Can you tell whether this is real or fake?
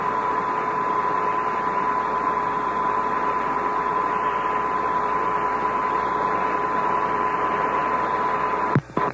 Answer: fake